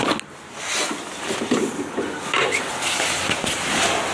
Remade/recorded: recorded